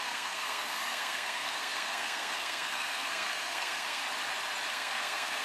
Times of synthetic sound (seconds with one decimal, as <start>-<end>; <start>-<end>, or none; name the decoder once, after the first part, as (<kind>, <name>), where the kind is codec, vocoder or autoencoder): 0.0-4.0 (codec, SNAC); 4.7-5.4